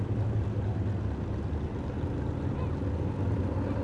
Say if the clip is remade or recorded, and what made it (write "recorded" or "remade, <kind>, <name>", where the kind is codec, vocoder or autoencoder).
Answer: recorded